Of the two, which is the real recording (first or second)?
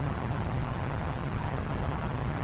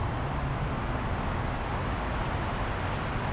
second